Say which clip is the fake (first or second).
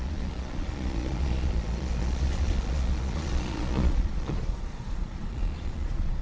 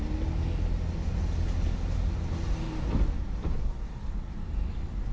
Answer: first